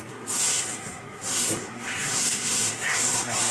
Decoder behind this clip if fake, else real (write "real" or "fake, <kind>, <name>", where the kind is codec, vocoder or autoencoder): fake, codec, SNAC